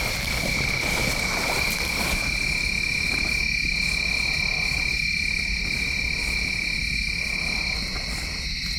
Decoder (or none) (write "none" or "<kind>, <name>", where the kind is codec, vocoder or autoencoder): none